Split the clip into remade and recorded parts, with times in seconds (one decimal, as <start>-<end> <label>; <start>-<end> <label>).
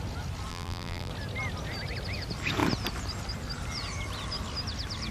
0.0-0.5 recorded; 0.5-1.1 remade; 1.1-5.1 recorded